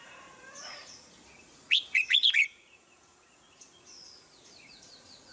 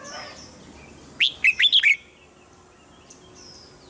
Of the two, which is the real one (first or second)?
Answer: second